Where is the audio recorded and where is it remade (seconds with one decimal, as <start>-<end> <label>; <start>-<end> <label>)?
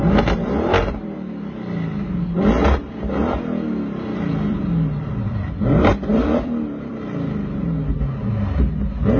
0.0-2.8 recorded; 2.8-5.6 remade; 5.6-6.1 recorded; 6.1-7.0 remade; 7.0-9.2 recorded